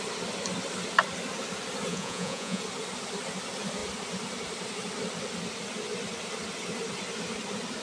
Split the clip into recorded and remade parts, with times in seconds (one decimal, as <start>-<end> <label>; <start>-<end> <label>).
0.0-1.9 recorded; 1.9-2.6 remade; 2.6-7.8 recorded